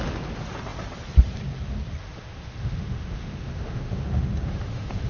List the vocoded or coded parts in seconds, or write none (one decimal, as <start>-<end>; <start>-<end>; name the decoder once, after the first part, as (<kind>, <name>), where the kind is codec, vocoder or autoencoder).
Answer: 2.0-5.1 (autoencoder, DAC-VAE)